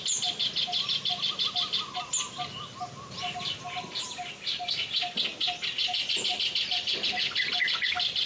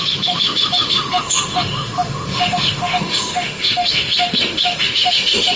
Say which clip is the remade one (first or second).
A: second